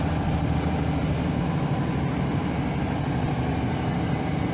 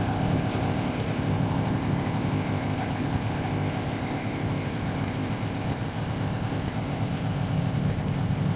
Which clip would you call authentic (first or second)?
first